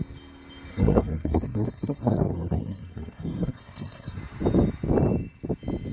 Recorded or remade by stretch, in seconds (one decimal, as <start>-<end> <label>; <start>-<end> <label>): 0.0-0.7 recorded; 0.7-4.2 remade; 4.2-5.9 recorded